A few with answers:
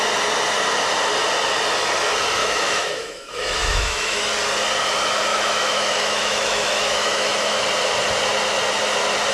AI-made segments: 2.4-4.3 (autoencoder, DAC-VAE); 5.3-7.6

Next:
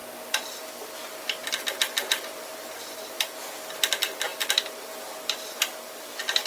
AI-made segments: none

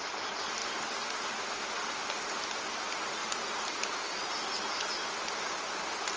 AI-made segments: none